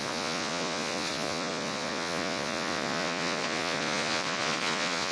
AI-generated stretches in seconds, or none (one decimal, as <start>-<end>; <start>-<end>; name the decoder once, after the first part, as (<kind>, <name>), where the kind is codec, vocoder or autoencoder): 0.0-5.1 (vocoder, Vocos)